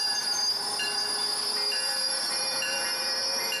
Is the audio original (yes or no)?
no